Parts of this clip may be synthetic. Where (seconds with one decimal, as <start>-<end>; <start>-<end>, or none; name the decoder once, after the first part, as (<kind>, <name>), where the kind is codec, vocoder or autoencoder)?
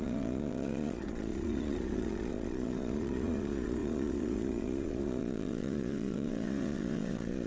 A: 0.0-7.5 (vocoder, Vocos)